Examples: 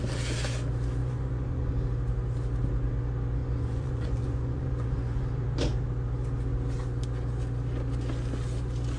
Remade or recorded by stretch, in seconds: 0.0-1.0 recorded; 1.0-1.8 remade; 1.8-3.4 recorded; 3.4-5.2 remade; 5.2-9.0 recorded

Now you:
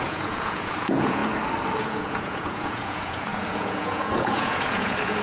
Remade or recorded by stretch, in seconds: 0.0-1.2 remade; 1.2-1.8 recorded; 1.8-5.2 remade

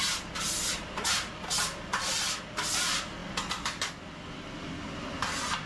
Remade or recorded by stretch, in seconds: 0.0-5.7 recorded

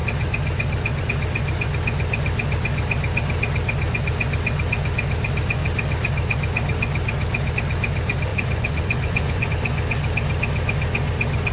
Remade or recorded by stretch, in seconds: 0.0-8.3 recorded; 8.3-9.5 remade; 9.5-11.5 recorded

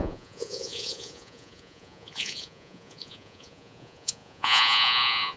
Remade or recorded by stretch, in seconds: 0.0-5.4 remade